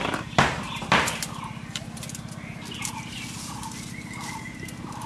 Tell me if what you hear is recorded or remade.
recorded